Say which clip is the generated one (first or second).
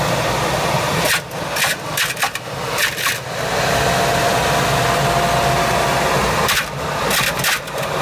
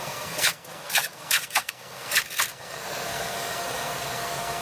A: second